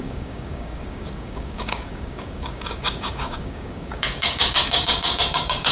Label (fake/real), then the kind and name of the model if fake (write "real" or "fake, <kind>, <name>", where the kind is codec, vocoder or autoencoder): fake, codec, DAC